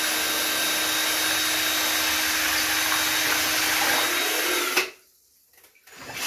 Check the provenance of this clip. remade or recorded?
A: recorded